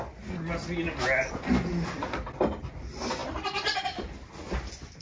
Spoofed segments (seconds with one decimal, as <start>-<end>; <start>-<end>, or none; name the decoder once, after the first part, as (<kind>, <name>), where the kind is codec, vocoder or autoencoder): 3.2-5.0 (vocoder, BigVGAN v2)